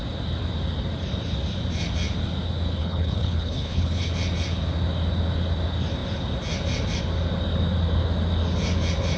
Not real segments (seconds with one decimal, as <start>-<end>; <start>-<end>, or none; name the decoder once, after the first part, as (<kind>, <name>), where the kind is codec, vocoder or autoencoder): 2.8-4.1 (codec, HILCodec)